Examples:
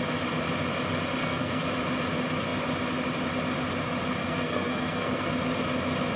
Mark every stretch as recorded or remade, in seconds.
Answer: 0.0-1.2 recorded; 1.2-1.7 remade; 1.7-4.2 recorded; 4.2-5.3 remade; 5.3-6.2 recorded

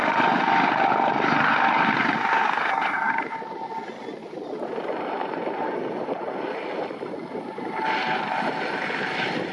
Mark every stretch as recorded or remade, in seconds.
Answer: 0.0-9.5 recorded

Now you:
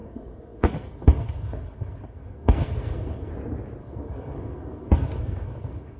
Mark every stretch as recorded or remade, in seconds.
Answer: 0.0-3.3 remade; 3.3-3.8 recorded; 3.8-6.0 remade